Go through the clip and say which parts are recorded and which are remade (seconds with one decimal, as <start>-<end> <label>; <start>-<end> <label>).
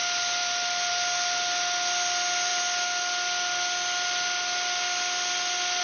0.0-5.8 recorded